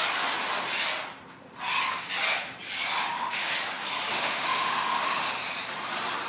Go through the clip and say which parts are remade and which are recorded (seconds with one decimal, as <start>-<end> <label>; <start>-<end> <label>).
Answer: 0.0-3.0 recorded; 3.0-3.6 remade; 3.6-4.1 recorded; 4.1-5.3 remade; 5.3-6.3 recorded